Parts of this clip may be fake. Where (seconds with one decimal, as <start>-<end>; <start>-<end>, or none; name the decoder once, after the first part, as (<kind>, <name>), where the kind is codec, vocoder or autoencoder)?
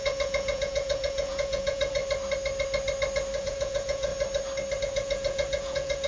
0.0-2.0 (vocoder, Vocos); 3.4-4.1; 4.8-6.1